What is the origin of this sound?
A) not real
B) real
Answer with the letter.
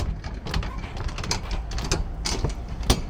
B